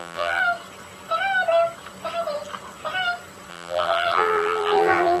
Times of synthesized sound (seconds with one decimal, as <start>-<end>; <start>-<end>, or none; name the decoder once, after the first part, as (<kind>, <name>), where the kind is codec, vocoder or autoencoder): 0.0-0.4 (vocoder, BigVGAN v2); 3.5-5.2